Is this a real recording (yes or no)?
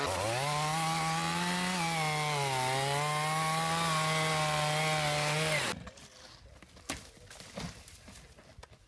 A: yes